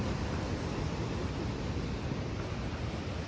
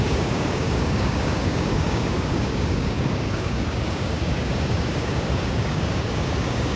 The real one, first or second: first